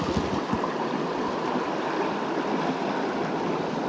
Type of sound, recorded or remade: recorded